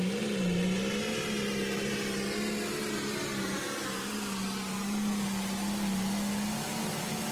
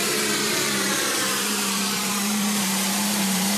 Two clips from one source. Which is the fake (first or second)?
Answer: second